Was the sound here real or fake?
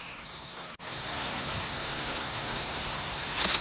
fake